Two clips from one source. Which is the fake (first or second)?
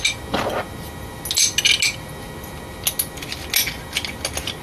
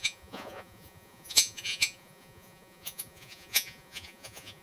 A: second